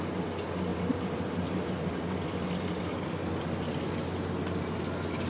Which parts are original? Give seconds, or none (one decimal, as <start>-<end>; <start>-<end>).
0.0-0.7; 3.9-5.3